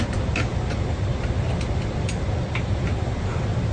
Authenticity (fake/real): real